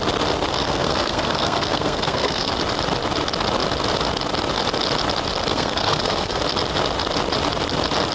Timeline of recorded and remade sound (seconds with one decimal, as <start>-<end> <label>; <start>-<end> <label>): 0.0-0.6 recorded; 0.6-2.5 remade; 2.5-5.5 recorded; 5.5-6.4 remade; 6.4-8.1 recorded